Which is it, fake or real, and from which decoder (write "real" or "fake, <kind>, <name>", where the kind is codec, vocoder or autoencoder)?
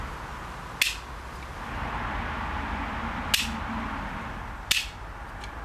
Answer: real